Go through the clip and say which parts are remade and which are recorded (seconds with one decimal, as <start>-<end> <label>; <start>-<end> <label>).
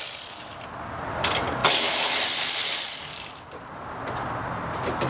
0.0-5.1 recorded